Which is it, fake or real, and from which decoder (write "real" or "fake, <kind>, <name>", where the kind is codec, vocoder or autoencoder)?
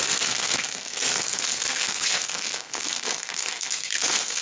fake, codec, SNAC